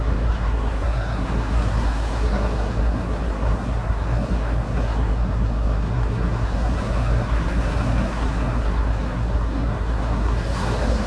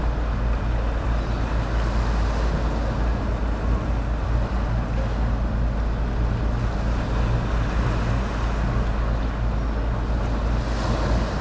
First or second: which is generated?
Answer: first